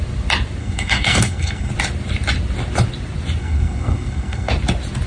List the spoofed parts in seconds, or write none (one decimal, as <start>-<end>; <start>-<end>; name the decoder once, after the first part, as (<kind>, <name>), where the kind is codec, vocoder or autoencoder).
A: 0.6-1.7 (codec, SNAC); 3.4-4.5